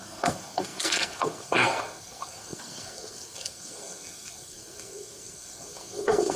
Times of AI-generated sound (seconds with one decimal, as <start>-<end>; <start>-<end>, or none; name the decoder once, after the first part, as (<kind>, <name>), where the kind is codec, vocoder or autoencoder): 0.0-6.4 (codec, SNAC)